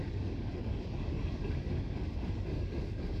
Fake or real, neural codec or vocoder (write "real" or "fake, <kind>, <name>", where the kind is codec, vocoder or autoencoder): fake, codec, DAC